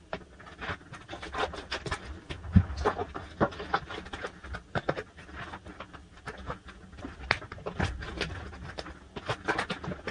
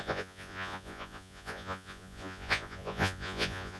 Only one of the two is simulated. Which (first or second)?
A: second